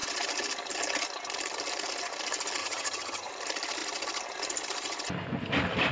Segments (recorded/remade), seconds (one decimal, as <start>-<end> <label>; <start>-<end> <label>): 0.0-2.6 recorded; 2.6-3.3 remade; 3.3-5.9 recorded